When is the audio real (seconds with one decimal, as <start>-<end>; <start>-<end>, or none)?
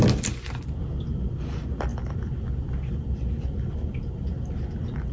0.0-5.1